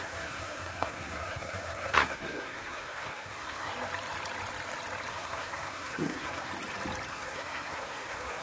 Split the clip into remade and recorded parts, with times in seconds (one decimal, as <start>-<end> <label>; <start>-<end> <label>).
0.0-3.7 remade; 3.7-5.1 recorded; 5.1-6.5 remade; 6.5-7.1 recorded; 7.1-8.4 remade